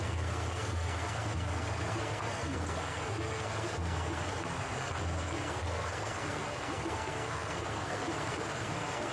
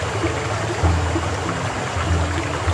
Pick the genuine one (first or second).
second